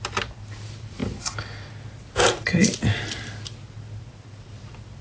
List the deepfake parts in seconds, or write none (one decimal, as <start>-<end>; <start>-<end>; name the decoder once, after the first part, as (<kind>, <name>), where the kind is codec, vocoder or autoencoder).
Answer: none

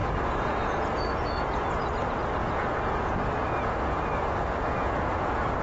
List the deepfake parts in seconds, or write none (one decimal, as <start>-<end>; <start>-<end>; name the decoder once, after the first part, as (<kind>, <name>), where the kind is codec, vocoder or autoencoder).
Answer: 0.0-1.9 (vocoder, Vocos); 2.4-5.6

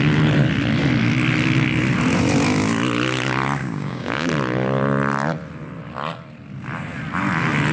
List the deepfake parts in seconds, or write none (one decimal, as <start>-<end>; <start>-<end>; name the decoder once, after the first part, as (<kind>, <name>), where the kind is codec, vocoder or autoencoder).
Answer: 3.6-4.3 (codec, DAC)

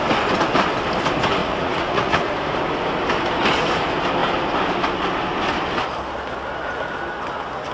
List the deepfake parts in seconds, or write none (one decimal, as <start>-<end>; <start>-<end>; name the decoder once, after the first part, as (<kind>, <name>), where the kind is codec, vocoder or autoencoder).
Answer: 1.4-2.3 (vocoder, Vocos)

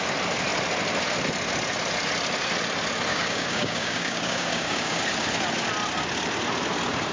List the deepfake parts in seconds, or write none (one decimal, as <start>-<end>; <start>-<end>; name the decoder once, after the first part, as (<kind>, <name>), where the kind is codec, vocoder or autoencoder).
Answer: 3.1-5.0 (codec, DAC)